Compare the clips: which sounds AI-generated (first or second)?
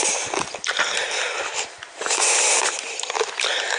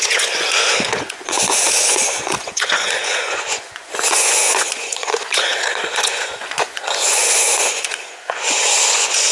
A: second